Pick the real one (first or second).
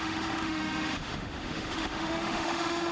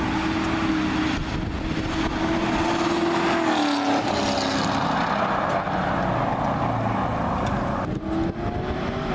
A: second